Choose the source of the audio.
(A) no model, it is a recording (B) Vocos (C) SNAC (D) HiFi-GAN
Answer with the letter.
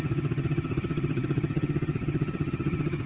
D